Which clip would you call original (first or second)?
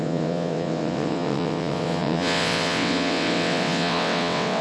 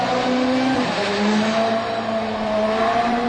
second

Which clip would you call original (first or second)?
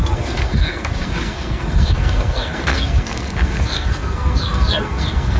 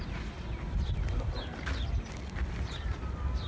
second